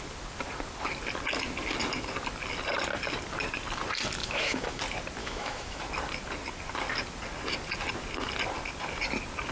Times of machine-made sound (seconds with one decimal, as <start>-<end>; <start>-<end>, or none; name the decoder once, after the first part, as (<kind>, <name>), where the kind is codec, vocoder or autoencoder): 4.2-4.8 (autoencoder, DAC-VAE); 5.2-5.8